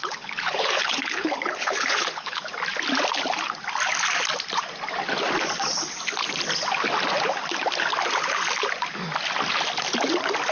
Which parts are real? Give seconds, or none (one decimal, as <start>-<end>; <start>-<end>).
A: 2.4-10.5